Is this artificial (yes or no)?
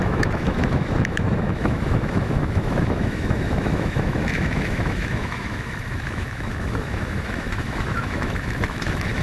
yes